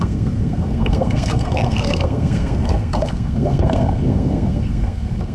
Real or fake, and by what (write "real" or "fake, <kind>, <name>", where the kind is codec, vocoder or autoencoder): fake, codec, SNAC